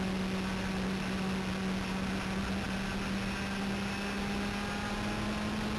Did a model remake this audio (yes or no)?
no